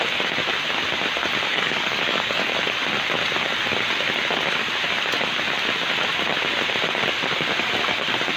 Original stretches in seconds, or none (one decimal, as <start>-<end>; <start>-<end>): 0.0-1.5; 2.5-8.4